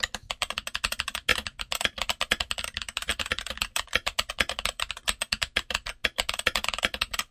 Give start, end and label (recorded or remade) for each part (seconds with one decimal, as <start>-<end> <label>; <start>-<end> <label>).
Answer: 0.0-3.1 recorded; 3.1-4.3 remade; 4.3-7.3 recorded